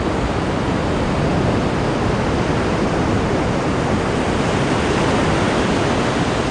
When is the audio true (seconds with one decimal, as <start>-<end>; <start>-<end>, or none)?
0.0-6.5